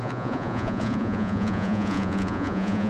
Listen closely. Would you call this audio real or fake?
fake